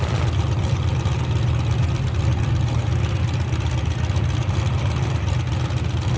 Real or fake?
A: real